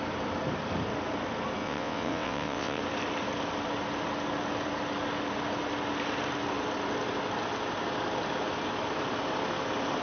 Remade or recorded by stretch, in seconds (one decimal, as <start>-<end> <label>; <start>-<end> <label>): 0.0-1.6 recorded; 1.6-2.8 remade; 2.8-10.0 recorded